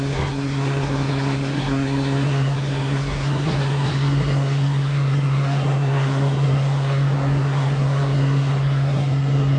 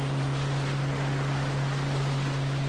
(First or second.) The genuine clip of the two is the second